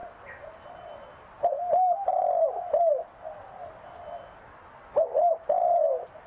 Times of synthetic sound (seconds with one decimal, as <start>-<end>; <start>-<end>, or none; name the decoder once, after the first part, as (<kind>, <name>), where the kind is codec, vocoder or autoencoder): none